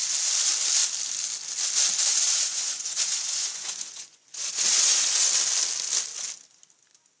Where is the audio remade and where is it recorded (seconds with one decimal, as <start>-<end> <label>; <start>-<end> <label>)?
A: 0.0-2.1 recorded; 2.1-5.3 remade; 5.3-7.2 recorded